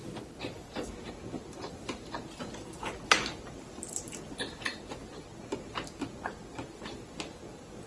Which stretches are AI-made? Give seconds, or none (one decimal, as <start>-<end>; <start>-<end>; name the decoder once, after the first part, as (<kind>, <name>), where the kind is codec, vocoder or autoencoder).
0.0-1.1 (vocoder, BigVGAN v2)

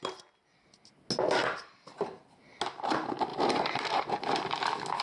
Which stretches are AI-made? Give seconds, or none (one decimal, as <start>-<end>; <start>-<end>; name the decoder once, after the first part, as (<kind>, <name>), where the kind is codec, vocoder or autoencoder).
1.4-2.6 (vocoder, BigVGAN v2); 3.3-4.6

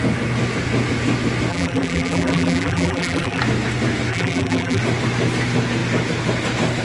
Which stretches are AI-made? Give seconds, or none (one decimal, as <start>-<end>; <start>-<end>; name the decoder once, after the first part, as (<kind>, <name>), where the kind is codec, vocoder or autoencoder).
1.5-3.4 (vocoder, BigVGAN v2); 4.1-4.8